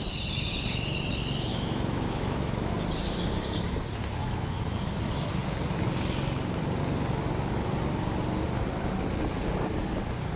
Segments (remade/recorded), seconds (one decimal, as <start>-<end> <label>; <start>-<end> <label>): 0.0-1.5 recorded; 1.5-2.7 remade; 2.7-4.2 recorded; 4.2-5.0 remade; 5.0-10.4 recorded